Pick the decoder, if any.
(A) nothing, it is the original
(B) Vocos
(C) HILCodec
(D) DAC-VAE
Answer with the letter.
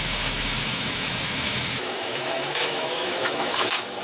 D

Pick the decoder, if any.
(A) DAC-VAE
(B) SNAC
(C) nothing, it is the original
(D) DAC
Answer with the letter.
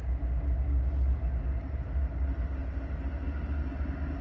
C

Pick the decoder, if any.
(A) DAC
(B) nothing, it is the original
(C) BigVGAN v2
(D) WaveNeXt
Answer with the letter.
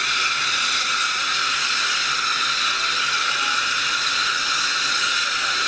B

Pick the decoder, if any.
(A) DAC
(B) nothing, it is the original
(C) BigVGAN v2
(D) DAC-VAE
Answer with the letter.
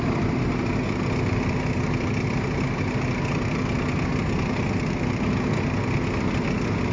B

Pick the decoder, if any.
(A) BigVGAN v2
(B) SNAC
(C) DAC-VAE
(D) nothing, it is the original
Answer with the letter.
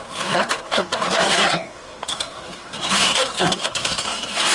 B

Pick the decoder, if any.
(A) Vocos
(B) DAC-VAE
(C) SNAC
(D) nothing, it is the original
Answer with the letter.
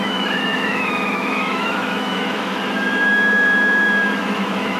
B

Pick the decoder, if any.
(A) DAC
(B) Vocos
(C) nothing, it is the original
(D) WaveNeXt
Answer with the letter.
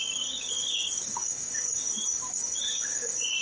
A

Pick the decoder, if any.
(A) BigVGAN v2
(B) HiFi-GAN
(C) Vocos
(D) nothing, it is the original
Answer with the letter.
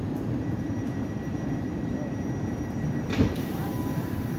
A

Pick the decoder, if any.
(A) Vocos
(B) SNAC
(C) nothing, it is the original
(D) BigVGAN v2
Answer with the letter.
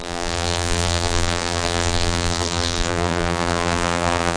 D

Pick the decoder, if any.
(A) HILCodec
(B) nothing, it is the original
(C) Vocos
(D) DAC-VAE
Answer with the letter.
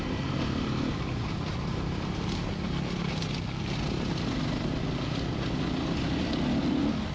B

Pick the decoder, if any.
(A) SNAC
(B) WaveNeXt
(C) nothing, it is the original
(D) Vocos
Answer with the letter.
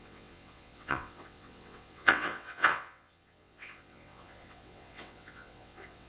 B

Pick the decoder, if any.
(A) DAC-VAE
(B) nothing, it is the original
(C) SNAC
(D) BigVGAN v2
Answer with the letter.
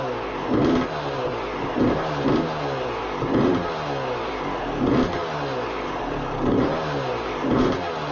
B